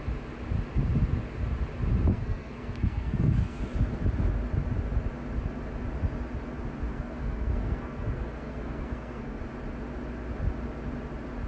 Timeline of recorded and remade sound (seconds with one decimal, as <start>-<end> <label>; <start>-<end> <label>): 0.0-2.1 recorded; 2.1-3.6 remade; 3.6-6.9 recorded; 6.9-9.4 remade; 9.4-11.5 recorded